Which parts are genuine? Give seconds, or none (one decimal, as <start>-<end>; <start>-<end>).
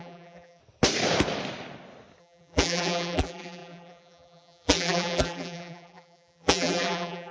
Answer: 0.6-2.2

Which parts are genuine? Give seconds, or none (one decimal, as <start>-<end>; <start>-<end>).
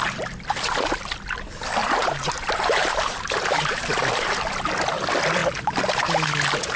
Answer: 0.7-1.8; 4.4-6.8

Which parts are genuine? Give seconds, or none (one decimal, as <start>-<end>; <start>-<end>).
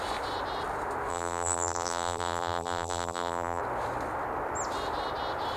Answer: 0.0-1.1; 3.6-5.6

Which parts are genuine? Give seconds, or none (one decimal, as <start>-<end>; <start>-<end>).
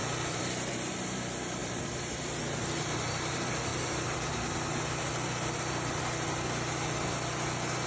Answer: 3.7-7.9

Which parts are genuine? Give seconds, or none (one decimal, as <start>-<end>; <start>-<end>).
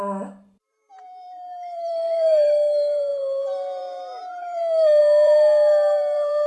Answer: none